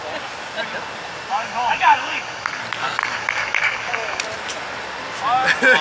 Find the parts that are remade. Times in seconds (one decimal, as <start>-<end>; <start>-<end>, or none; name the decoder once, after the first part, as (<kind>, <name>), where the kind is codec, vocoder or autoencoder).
1.3-2.6 (codec, DAC); 3.0-4.2